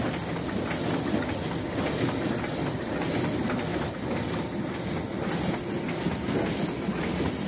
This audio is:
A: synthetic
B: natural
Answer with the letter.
B